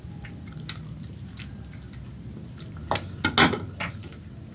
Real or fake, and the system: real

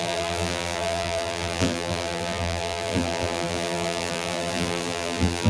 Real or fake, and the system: fake, vocoder, BigVGAN v2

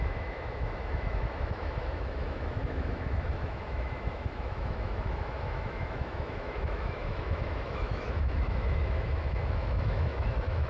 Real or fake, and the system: fake, autoencoder, DAC-VAE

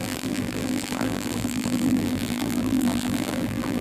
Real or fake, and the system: fake, vocoder, BigVGAN v2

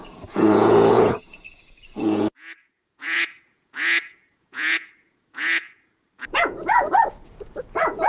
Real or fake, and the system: fake, vocoder, Vocos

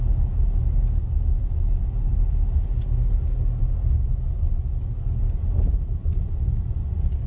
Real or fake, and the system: real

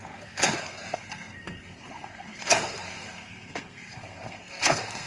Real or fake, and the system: fake, codec, SNAC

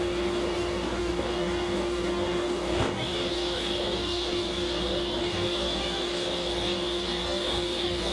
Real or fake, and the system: fake, codec, DAC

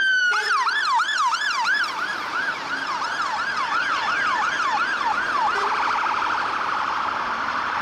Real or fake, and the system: fake, vocoder, BigVGAN v2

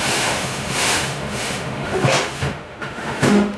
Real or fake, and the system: fake, autoencoder, DAC-VAE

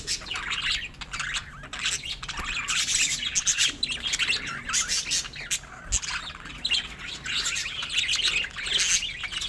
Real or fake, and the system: real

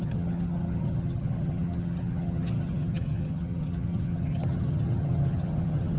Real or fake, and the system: fake, vocoder, HiFi-GAN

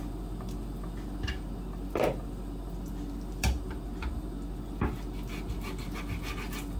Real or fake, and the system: real